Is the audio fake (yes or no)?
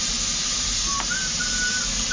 no